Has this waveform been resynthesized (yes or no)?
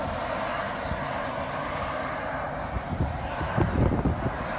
no